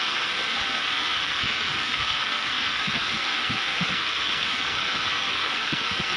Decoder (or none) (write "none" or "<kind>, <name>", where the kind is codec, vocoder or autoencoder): codec, SNAC